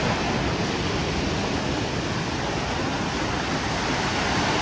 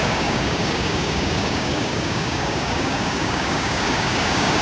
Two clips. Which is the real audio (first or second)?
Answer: first